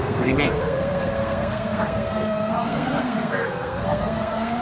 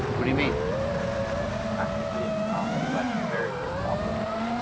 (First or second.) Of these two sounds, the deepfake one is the first